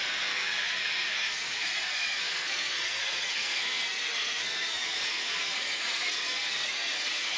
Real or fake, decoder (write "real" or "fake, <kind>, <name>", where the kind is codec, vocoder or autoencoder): fake, codec, SNAC